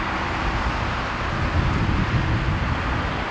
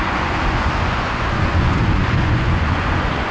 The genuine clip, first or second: first